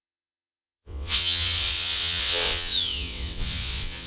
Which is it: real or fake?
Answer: fake